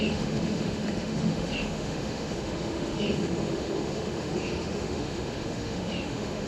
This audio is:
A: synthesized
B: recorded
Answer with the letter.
A